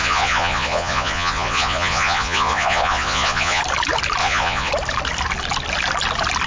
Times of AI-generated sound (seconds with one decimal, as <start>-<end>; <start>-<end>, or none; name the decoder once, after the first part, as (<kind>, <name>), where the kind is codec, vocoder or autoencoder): 0.0-3.6 (vocoder, Vocos); 4.2-4.7